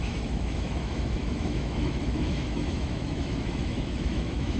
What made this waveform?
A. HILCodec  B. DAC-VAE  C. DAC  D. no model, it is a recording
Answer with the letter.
B